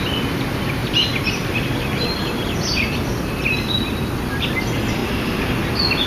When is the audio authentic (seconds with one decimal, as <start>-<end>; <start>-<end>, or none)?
0.0-6.1